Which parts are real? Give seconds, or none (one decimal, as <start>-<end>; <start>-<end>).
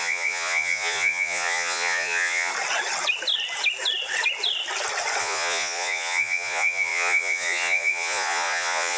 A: 2.5-5.2